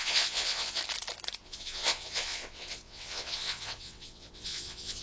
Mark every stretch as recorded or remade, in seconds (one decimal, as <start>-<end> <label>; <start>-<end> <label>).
0.0-0.8 remade; 0.8-1.4 recorded; 1.4-5.0 remade